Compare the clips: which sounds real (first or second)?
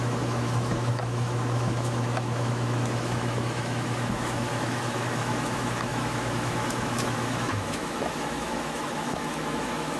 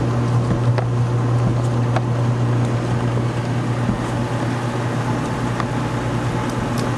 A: second